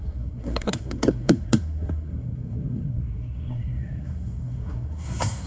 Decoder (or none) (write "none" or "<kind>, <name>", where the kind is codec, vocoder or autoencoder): codec, SNAC